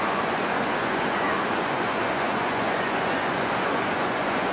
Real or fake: fake